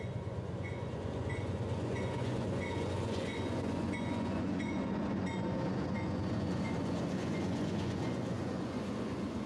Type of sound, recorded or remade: remade